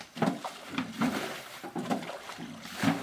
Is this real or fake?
real